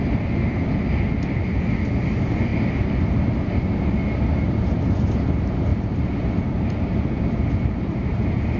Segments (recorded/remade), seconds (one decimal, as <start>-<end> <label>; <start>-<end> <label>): 0.0-5.7 recorded; 5.7-8.6 remade